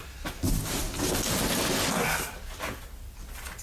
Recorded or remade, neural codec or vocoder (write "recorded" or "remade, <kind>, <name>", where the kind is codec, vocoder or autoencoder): recorded